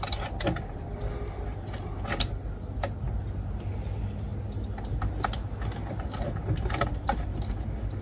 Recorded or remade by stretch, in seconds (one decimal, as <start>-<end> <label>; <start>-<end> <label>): 0.0-8.0 recorded